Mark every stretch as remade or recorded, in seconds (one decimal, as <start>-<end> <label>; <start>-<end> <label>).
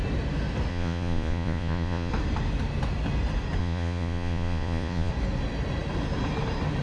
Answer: 0.0-0.7 recorded; 0.7-2.1 remade; 2.1-3.6 recorded; 3.6-5.1 remade; 5.1-6.8 recorded